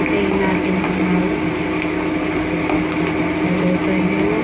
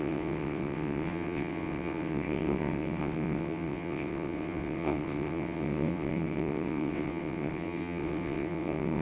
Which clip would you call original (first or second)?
first